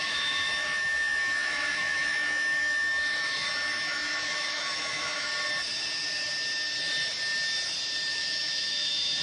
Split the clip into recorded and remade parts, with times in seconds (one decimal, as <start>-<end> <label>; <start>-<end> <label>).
0.0-5.3 remade; 5.3-8.1 recorded; 8.1-9.2 remade